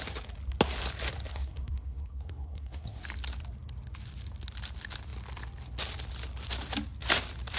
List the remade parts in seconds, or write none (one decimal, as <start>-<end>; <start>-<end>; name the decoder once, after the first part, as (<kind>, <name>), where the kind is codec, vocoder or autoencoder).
1.3-3.0 (codec, SNAC)

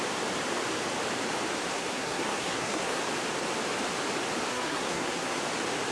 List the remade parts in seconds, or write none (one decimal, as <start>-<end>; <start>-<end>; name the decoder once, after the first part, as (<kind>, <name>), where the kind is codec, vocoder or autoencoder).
1.7-3.0 (codec, SNAC); 4.5-5.4

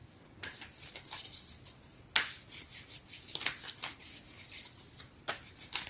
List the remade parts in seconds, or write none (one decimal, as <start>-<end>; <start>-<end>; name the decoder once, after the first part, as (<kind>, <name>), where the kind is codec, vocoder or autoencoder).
none

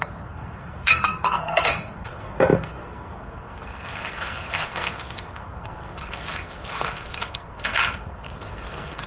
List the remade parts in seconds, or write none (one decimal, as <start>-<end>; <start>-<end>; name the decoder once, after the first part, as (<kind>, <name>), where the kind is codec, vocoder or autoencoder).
0.0-9.1 (codec, SNAC)

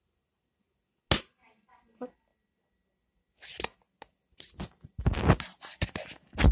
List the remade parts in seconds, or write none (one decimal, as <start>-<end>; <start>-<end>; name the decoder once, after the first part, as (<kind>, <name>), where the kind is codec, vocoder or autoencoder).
none

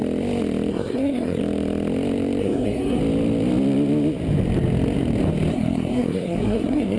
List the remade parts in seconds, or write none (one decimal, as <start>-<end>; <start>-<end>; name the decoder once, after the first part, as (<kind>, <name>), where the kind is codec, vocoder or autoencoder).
0.7-1.4 (codec, SNAC); 2.4-3.0; 5.5-7.0

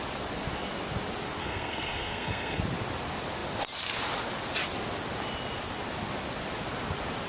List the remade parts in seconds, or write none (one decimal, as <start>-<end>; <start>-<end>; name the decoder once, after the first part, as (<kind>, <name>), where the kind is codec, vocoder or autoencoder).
1.4-2.6 (codec, SNAC)